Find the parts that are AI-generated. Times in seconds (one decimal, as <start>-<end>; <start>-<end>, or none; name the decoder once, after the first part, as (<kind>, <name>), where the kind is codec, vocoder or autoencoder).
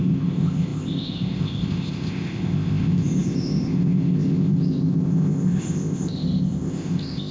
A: 0.0-7.3 (codec, ZipCodec)